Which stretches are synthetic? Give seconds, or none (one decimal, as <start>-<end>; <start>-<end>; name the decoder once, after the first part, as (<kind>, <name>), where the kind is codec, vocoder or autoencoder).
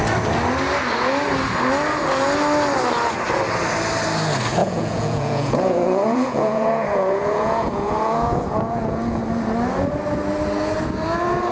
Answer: 4.6-9.2 (vocoder, Vocos)